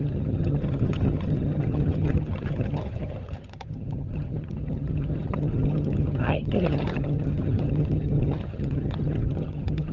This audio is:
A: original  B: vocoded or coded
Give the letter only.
B